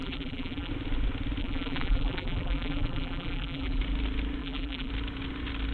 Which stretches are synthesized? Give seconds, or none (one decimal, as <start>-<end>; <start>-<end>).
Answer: 0.0-0.7; 1.4-3.8; 4.4-4.9